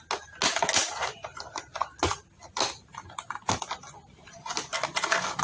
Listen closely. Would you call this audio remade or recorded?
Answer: recorded